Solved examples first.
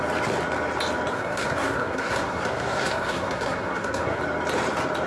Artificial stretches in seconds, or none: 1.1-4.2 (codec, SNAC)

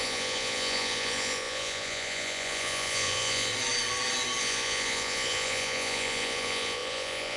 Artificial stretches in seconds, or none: 0.0-3.5 (vocoder, Vocos); 4.4-7.4

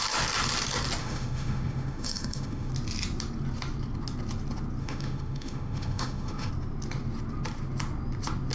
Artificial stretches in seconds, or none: 1.0-2.7 (autoencoder, DAC-VAE); 4.8-6.5